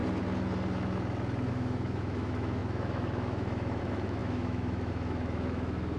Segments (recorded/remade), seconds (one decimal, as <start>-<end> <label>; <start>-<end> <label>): 0.0-1.5 recorded; 1.5-6.0 remade